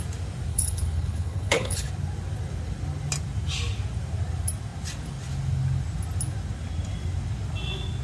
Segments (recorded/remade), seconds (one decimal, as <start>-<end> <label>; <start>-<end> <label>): 0.0-0.5 recorded; 0.5-1.9 remade; 1.9-8.0 recorded